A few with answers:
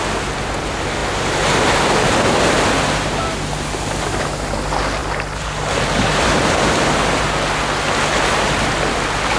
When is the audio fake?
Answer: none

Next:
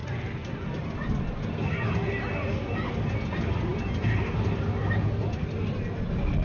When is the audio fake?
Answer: none

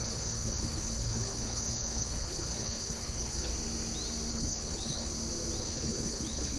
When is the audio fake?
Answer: 0.0-3.5 (codec, HILCodec); 4.3-5.1; 5.6-6.6